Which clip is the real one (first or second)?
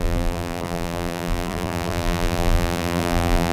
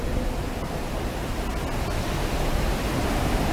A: second